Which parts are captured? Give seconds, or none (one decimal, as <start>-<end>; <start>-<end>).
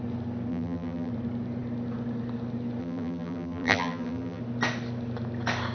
0.0-0.5; 1.1-2.8; 4.4-5.7